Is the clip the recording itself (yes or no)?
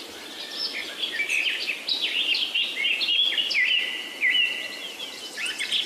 yes